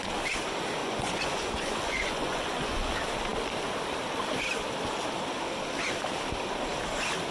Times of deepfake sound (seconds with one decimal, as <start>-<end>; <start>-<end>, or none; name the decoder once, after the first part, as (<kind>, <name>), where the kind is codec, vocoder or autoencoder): 0.8-2.9 (vocoder, Vocos)